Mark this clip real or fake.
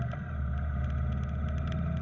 real